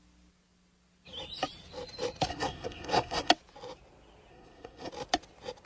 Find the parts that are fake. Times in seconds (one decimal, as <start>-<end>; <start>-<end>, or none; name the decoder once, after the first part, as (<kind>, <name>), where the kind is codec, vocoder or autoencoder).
2.3-3.3 (codec, SNAC); 4.3-4.9